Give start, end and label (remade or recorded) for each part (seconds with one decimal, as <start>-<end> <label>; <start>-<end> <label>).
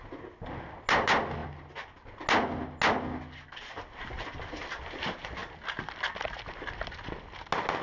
0.0-7.8 recorded